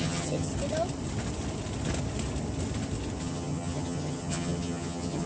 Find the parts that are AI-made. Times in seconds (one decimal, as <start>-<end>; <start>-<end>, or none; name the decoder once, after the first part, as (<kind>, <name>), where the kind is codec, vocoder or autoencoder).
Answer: 0.0-0.5 (vocoder, HiFi-GAN); 3.2-5.3